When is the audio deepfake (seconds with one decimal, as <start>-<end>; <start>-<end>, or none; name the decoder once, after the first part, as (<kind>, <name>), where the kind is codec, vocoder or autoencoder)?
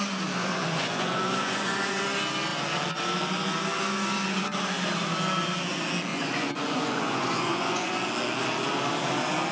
0.4-2.0 (vocoder, Vocos); 6.1-7.9